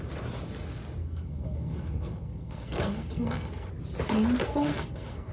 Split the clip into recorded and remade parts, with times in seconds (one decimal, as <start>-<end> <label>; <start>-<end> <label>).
0.0-1.0 recorded; 1.0-3.7 remade; 3.7-4.4 recorded; 4.4-5.3 remade